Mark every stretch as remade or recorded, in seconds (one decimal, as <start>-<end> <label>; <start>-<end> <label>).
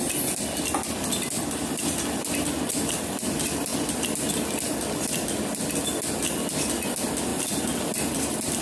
0.0-8.6 recorded